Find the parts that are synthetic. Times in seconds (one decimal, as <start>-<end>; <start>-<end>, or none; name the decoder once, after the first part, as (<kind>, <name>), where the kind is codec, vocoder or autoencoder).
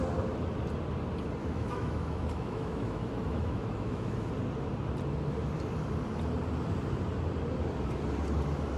1.4-4.3 (autoencoder, DAC-VAE)